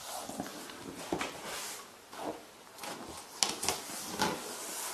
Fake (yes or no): no